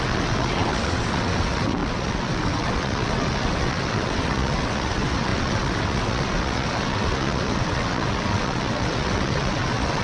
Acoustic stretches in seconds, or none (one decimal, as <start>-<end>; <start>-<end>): none